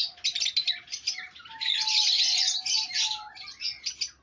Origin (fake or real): real